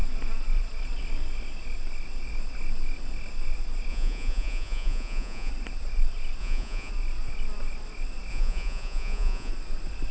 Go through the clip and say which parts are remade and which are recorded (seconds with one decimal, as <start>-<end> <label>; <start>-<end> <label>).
0.0-3.9 recorded; 3.9-5.5 remade; 5.5-6.4 recorded; 6.4-6.9 remade; 6.9-8.3 recorded; 8.3-9.5 remade; 9.5-10.1 recorded